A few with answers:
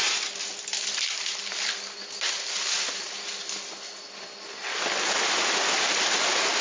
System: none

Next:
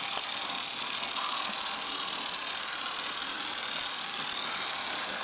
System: none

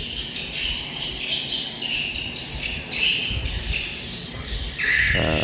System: none